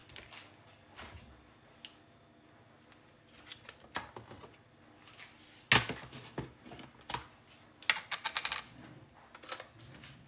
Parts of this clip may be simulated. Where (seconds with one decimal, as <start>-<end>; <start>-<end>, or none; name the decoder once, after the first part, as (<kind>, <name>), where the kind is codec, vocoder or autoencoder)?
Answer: none